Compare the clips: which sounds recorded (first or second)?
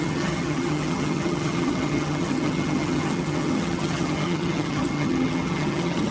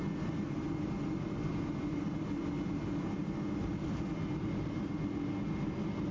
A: second